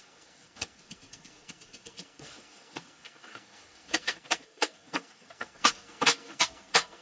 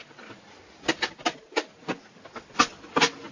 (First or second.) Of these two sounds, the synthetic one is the first